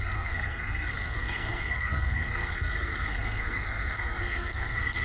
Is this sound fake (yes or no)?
yes